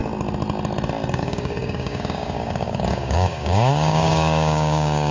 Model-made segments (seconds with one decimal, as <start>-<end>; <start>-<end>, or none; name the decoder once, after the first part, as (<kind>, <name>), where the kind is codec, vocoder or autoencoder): 1.1-5.1 (codec, DAC)